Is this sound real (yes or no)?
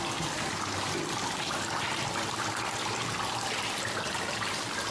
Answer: yes